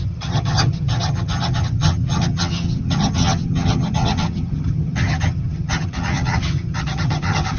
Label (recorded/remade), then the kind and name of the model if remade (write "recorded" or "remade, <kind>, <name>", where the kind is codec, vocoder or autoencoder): remade, vocoder, HiFi-GAN